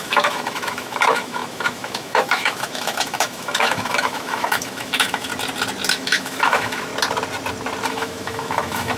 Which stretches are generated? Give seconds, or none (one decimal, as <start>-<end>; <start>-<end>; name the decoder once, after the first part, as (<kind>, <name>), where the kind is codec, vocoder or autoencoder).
0.0-5.3 (autoencoder, DAC-VAE); 5.9-6.9; 7.9-9.0